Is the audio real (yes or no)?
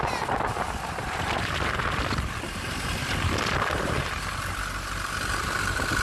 yes